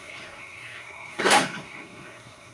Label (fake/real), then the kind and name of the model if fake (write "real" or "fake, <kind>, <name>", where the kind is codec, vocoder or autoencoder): fake, codec, SNAC